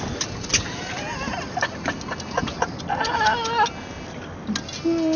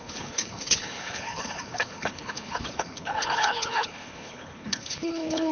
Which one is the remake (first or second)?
second